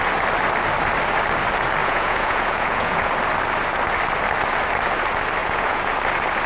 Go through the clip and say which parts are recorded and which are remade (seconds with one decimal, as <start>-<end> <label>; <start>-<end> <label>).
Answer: 0.0-1.8 recorded; 1.8-3.1 remade; 3.1-5.4 recorded; 5.4-5.9 remade; 5.9-6.5 recorded